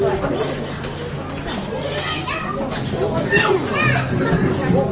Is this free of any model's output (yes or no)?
yes